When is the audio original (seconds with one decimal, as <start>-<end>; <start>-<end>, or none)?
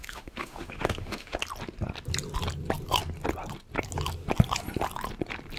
1.4-5.6